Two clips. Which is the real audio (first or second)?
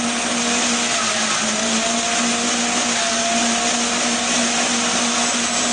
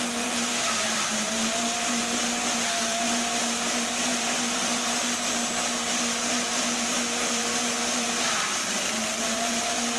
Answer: first